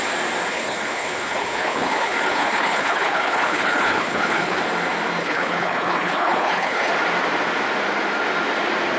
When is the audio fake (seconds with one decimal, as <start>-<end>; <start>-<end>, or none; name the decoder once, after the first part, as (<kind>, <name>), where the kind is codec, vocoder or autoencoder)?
0.5-4.6 (codec, HILCodec); 5.2-6.9